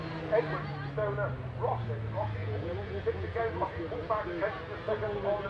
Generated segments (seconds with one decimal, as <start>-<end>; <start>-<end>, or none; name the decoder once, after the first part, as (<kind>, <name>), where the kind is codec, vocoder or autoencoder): 2.4-3.4 (vocoder, Vocos)